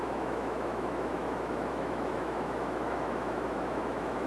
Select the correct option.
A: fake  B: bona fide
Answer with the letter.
A